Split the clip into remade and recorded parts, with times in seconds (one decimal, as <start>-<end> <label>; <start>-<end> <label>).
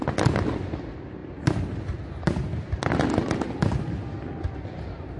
0.0-5.2 recorded